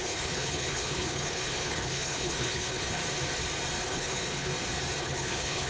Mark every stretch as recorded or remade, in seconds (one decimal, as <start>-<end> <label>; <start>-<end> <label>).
0.0-3.0 remade; 3.0-3.8 recorded; 3.8-4.5 remade; 4.5-5.0 recorded; 5.0-5.7 remade